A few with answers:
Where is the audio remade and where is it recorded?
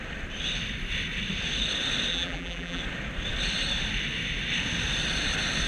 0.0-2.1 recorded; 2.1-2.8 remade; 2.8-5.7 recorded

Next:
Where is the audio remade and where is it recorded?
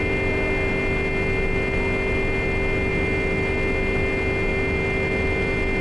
0.0-5.8 recorded